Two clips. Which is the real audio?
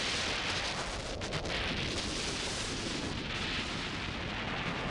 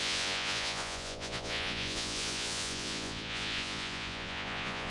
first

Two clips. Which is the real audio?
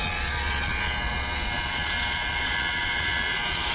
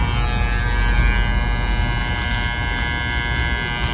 second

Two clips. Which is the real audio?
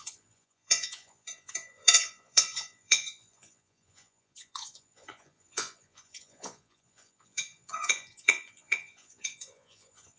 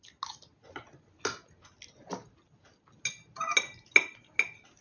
second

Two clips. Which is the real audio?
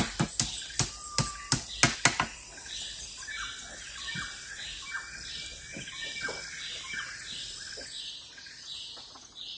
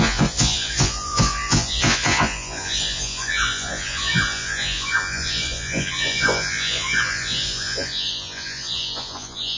first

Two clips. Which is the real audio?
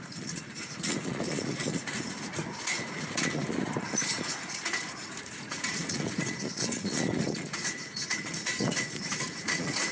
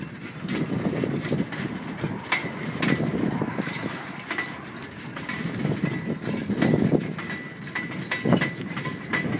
second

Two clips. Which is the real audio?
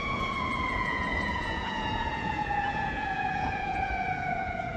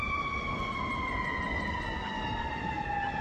second